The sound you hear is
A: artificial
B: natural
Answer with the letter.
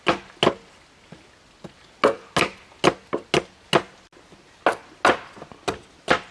B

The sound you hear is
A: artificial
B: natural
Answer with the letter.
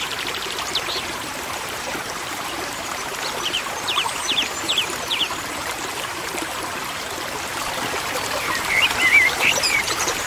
A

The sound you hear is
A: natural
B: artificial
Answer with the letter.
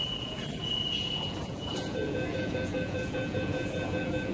B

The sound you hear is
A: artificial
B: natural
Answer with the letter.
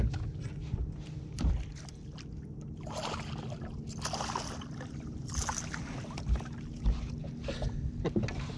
B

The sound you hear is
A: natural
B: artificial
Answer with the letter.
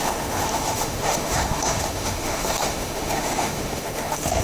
B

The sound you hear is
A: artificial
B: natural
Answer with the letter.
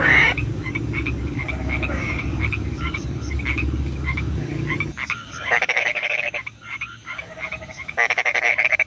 A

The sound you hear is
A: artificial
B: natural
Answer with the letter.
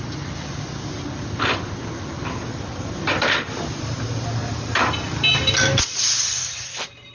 B